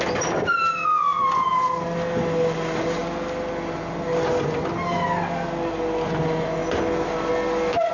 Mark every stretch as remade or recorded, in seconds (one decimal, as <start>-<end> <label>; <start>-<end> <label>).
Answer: 0.0-7.9 recorded